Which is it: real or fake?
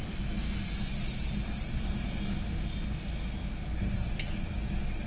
real